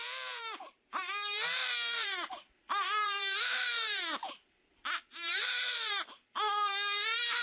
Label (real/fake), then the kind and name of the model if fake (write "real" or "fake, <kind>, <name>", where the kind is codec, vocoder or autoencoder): fake, vocoder, BigVGAN v2